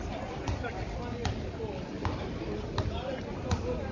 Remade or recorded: recorded